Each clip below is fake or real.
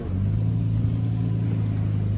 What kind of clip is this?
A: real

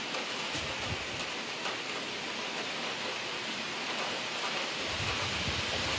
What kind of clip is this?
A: real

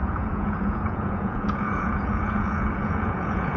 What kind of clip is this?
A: fake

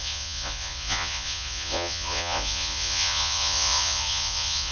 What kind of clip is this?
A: fake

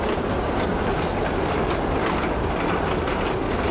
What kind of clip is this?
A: real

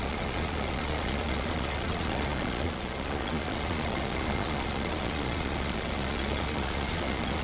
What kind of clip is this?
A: fake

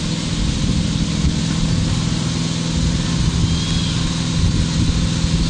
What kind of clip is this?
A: real